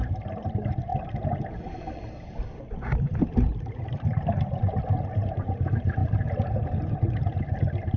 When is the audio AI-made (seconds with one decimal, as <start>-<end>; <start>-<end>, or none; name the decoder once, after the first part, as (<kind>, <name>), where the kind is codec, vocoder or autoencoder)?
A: none